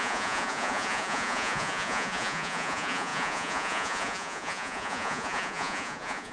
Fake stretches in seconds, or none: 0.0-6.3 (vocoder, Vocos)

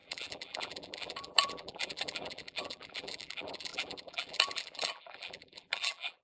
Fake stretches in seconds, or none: 0.0-6.2 (vocoder, BigVGAN v2)

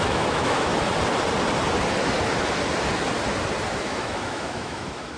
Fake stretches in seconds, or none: 0.0-0.7 (autoencoder, DAC-VAE); 3.8-5.2